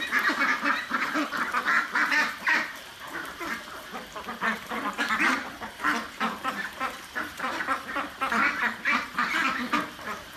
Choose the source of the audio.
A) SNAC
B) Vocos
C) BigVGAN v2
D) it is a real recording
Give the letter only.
C